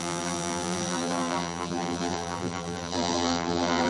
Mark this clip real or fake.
fake